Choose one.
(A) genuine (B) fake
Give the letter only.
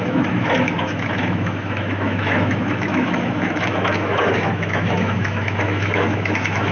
B